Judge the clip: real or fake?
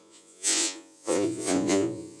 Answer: fake